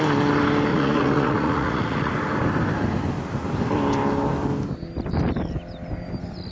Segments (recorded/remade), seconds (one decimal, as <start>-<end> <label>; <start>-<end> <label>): 0.0-0.7 recorded; 0.7-2.1 remade; 2.1-6.5 recorded